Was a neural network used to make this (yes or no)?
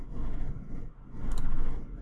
no